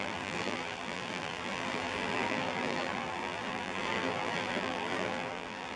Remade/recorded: remade